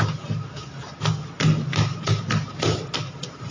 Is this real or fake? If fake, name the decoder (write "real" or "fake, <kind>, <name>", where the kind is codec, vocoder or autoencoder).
real